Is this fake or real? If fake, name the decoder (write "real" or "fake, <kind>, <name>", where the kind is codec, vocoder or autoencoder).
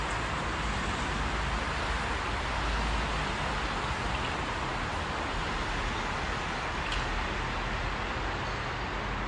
real